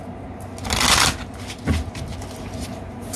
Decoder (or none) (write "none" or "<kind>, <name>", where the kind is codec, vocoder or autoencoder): none